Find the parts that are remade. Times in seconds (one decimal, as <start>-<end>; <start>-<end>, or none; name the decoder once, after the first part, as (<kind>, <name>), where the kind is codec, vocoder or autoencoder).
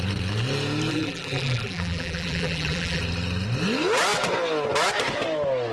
0.9-3.0 (vocoder, BigVGAN v2)